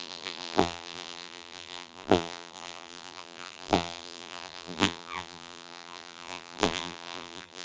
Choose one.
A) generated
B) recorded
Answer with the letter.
A